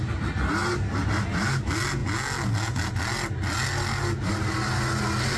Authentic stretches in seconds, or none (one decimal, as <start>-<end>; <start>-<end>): 0.0-5.4